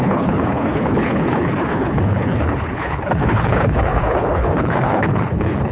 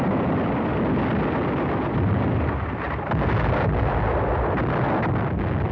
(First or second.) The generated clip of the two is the first